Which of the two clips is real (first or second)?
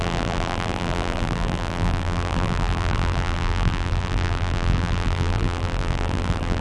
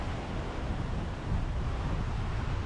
second